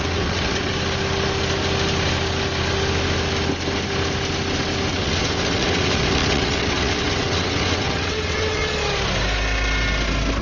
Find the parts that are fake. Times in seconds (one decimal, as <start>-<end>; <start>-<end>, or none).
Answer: 0.0-0.7; 4.9-8.6